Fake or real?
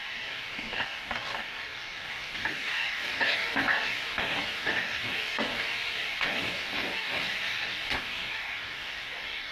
fake